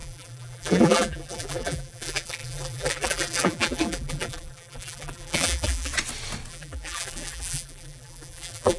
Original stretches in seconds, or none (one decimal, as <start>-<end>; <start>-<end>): 5.9-6.5